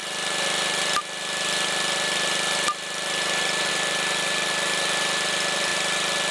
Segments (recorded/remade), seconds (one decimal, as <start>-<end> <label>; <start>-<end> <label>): 0.0-3.7 recorded; 3.7-5.7 remade; 5.7-6.3 recorded